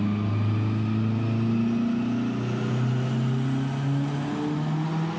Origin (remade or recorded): recorded